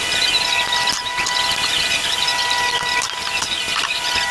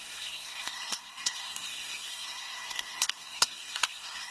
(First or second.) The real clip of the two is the first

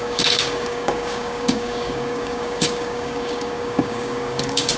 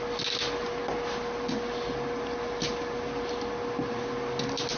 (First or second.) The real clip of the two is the second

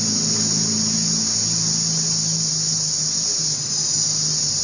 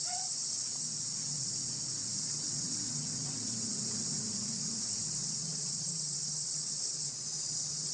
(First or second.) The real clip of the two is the first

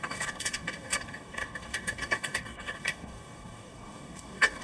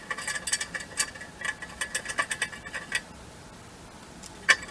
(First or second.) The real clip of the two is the second